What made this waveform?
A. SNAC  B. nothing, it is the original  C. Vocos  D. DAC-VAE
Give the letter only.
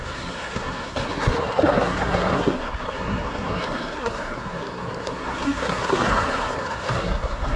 A